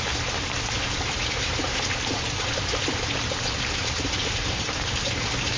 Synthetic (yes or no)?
yes